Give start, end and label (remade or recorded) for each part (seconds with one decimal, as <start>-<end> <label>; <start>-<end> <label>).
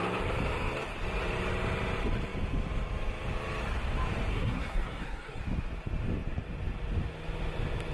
0.0-4.3 recorded; 4.3-5.4 remade; 5.4-7.9 recorded